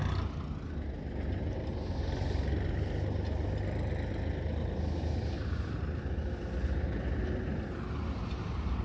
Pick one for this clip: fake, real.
real